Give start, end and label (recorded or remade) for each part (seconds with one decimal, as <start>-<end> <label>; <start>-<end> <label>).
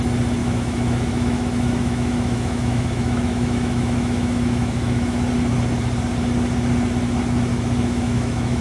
0.0-0.4 recorded; 0.4-5.3 remade; 5.3-7.5 recorded; 7.5-8.6 remade